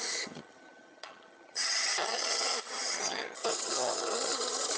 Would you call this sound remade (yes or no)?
yes